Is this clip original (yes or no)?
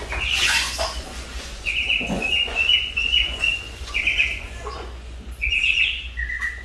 no